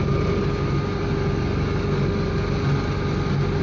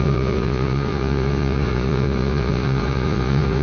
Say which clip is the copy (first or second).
second